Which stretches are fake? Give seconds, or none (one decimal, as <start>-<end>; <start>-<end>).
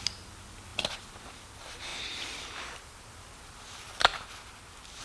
0.7-1.4; 1.9-3.3